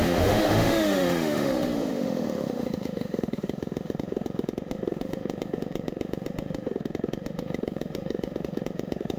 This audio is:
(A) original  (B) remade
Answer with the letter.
B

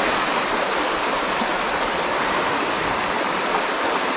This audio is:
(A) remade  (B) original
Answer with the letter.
B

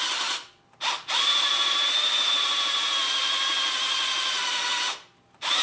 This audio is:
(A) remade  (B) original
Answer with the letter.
B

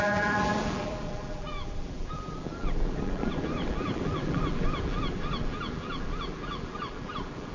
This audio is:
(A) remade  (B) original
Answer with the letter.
A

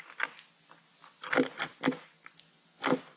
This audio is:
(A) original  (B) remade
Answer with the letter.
A